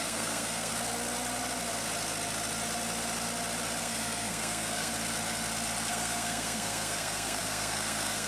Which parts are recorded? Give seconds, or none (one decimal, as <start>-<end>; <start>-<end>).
0.7-3.8; 4.9-5.9